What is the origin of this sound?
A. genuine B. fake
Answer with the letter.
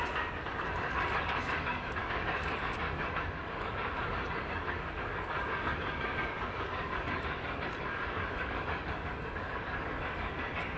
B